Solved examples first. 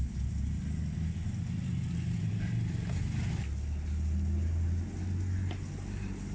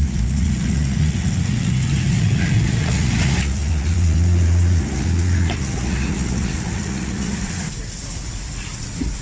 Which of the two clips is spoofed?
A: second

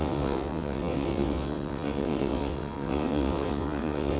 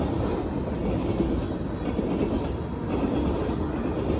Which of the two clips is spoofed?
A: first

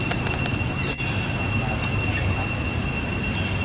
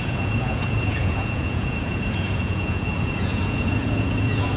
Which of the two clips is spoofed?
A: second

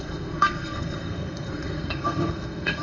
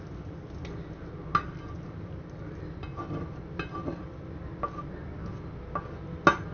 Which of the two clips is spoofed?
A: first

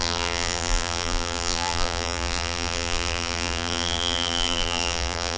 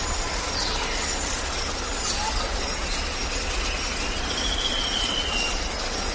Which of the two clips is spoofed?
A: first